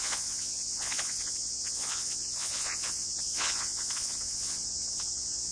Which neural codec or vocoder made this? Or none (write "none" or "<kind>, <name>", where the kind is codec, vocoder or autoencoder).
vocoder, Vocos